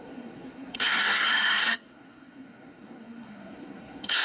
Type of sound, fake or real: fake